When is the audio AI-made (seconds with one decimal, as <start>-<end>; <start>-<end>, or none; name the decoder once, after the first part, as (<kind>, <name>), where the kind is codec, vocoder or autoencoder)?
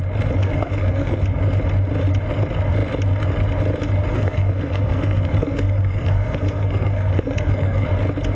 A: 0.4-1.2 (codec, SNAC); 4.1-7.9